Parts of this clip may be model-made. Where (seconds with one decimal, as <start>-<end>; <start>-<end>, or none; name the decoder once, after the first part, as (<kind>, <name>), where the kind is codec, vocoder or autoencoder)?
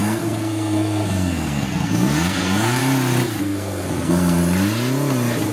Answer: 0.0-2.8 (codec, SNAC); 3.4-4.4